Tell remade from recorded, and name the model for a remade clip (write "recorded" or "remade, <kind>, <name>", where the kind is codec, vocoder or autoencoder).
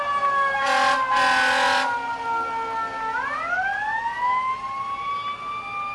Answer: recorded